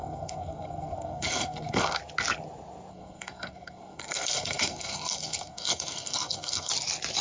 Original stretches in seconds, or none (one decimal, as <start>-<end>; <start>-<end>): 2.0-2.9; 6.7-7.2